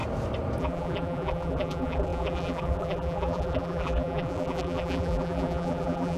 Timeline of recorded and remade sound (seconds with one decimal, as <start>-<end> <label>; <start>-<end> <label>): 0.0-0.6 recorded; 0.6-6.2 remade